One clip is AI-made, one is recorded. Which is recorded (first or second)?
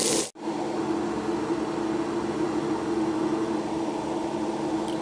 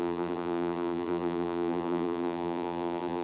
first